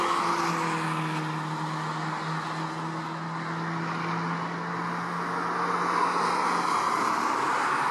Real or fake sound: real